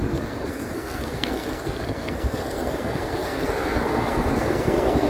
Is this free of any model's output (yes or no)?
no